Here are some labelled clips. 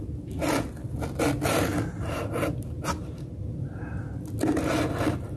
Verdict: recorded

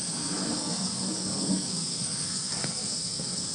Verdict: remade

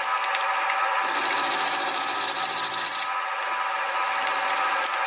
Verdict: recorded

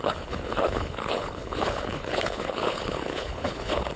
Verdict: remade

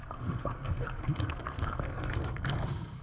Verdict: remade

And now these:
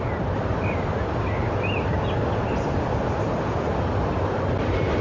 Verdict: recorded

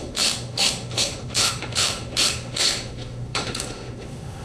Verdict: remade